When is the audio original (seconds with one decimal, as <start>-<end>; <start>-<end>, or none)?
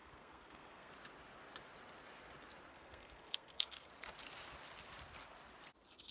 0.9-2.7; 3.9-6.1